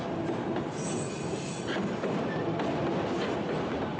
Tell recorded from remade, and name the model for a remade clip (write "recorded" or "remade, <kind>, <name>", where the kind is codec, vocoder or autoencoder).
recorded